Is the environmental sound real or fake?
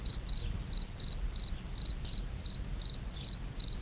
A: real